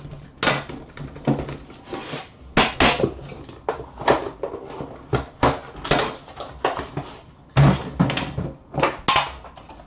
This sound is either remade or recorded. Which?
recorded